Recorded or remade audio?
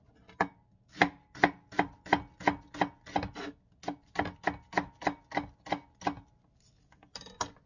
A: recorded